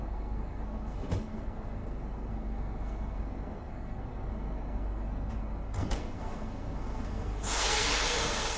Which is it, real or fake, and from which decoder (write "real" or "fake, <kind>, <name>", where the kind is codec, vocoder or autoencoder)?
fake, codec, SNAC